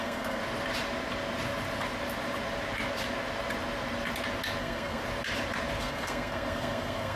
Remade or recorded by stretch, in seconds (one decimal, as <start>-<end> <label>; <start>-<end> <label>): 0.0-0.4 remade; 0.4-4.6 recorded; 4.6-5.0 remade; 5.0-5.8 recorded; 5.8-7.2 remade